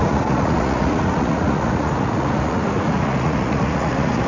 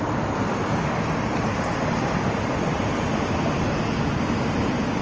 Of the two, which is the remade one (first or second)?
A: first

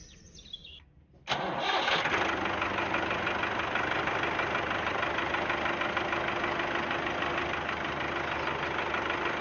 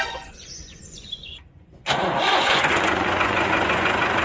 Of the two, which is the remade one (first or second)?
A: second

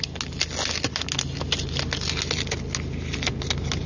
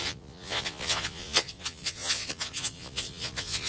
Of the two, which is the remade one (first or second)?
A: second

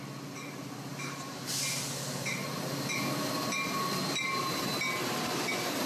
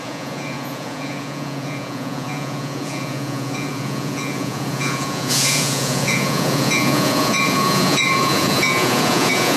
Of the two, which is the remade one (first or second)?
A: second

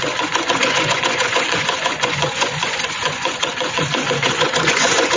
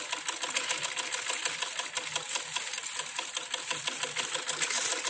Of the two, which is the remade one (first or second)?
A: first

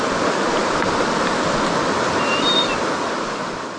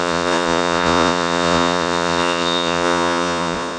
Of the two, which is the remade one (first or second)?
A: second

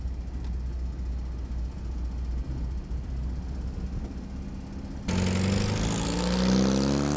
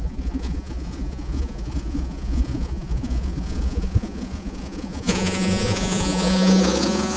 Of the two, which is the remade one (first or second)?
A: second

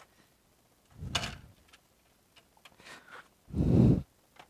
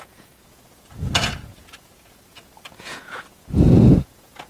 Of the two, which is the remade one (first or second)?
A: second